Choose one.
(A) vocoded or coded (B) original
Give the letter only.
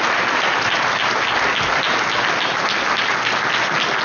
B